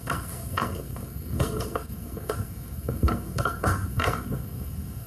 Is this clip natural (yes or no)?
no